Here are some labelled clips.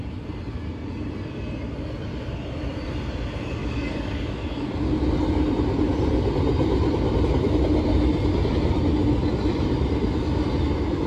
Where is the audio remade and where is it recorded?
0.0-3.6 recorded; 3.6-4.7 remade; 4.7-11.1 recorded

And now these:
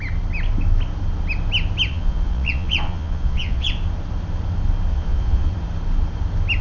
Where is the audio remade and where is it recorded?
0.0-1.9 recorded; 1.9-3.7 remade; 3.7-4.9 recorded; 4.9-5.5 remade; 5.5-6.6 recorded

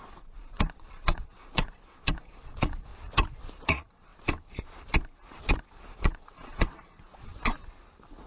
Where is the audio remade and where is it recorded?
0.0-2.9 remade; 2.9-3.5 recorded; 3.5-4.1 remade; 4.1-5.7 recorded; 5.7-7.3 remade; 7.3-8.3 recorded

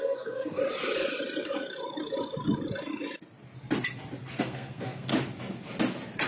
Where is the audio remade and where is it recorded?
0.0-0.6 remade; 0.6-4.4 recorded; 4.4-5.1 remade; 5.1-6.3 recorded

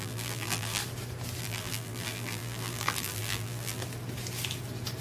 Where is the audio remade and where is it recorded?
0.0-0.8 remade; 0.8-1.4 recorded; 1.4-3.8 remade; 3.8-5.0 recorded

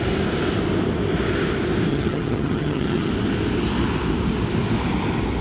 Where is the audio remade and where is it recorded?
0.0-1.9 recorded; 1.9-3.1 remade; 3.1-5.4 recorded

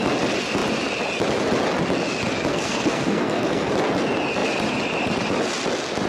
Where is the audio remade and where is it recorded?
0.0-2.5 recorded; 2.5-3.7 remade; 3.7-6.1 recorded